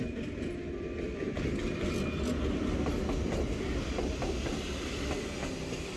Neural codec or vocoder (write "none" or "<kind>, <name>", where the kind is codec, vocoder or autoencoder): none